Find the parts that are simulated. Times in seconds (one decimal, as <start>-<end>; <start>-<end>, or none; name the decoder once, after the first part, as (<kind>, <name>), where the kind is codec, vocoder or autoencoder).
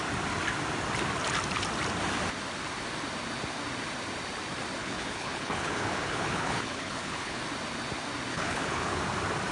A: 4.8-7.4 (codec, HILCodec); 8.3-9.0